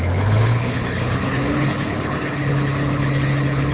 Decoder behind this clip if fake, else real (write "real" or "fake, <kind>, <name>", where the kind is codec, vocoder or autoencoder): fake, codec, HILCodec